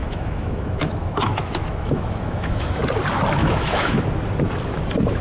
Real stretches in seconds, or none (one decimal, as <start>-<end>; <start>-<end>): 2.8-3.4; 4.0-5.2